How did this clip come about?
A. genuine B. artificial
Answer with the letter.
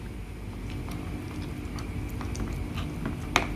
A